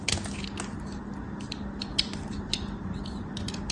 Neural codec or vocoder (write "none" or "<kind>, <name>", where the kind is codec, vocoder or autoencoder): none